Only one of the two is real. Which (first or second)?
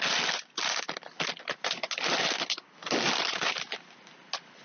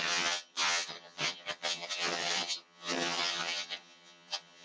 first